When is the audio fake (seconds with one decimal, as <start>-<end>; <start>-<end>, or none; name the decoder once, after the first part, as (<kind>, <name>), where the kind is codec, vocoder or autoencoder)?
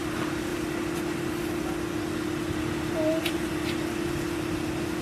none